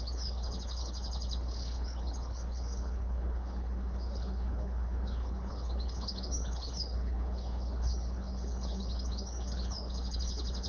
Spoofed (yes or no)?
yes